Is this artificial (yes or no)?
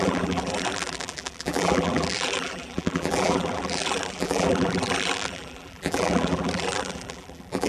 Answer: yes